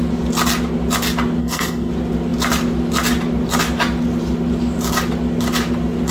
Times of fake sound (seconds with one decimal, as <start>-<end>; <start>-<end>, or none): 1.4-1.9